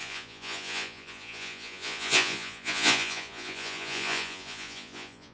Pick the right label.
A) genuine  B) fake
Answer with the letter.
B